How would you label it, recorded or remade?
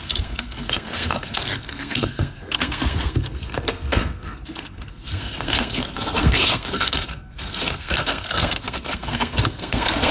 remade